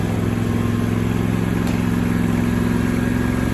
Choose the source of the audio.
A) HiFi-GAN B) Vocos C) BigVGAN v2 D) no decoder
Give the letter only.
D